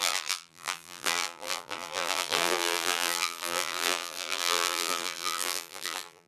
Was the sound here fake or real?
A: fake